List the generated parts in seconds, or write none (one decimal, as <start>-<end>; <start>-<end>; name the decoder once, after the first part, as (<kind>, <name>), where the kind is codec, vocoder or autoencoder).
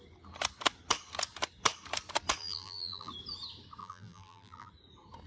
2.4-3.1 (vocoder, BigVGAN v2); 3.8-4.7